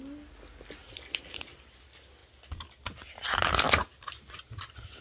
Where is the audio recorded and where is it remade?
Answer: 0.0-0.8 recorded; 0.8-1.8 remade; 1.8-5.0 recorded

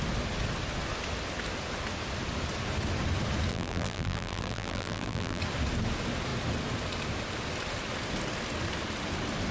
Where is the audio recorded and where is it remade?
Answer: 0.0-3.5 recorded; 3.5-5.4 remade; 5.4-9.5 recorded

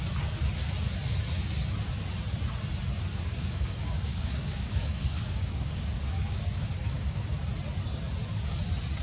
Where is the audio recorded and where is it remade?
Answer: 0.0-3.1 recorded; 3.1-7.3 remade; 7.3-9.0 recorded

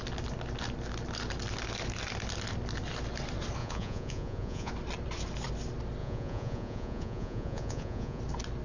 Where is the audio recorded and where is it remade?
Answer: 0.0-3.6 recorded; 3.6-4.7 remade; 4.7-6.0 recorded; 6.0-8.2 remade; 8.2-8.6 recorded